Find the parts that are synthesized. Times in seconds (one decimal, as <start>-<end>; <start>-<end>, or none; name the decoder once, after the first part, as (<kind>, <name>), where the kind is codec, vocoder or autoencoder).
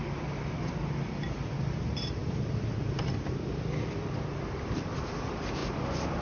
0.0-5.6 (vocoder, BigVGAN v2)